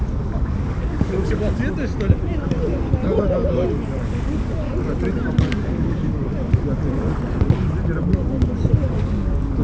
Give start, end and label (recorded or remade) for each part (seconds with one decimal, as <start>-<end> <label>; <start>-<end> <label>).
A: 0.0-1.6 remade; 1.6-4.0 recorded; 4.0-4.7 remade; 4.7-5.5 recorded; 5.5-6.2 remade; 6.2-8.8 recorded; 8.8-9.6 remade